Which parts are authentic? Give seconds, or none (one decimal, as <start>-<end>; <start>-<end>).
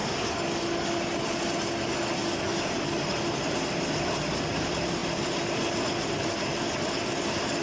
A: 0.0-3.0; 5.0-5.9